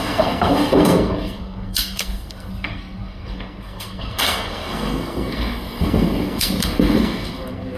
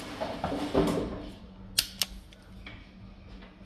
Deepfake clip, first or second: first